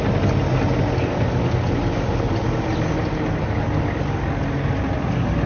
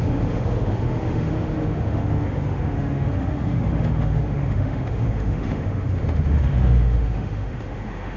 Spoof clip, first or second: second